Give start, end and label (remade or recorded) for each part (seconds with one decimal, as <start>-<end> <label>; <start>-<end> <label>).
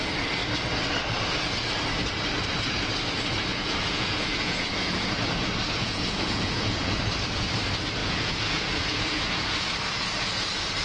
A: 0.0-3.5 recorded; 3.5-4.7 remade; 4.7-5.8 recorded; 5.8-7.0 remade; 7.0-8.0 recorded; 8.0-9.7 remade; 9.7-10.8 recorded